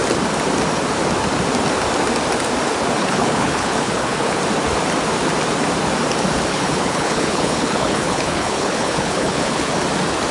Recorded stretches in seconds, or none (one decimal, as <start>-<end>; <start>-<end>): 0.0-3.0; 4.4-6.5; 9.7-10.3